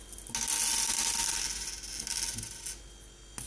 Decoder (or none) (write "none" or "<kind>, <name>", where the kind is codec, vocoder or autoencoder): none